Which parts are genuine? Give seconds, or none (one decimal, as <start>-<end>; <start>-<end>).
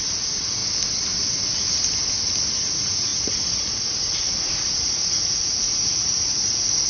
0.6-2.5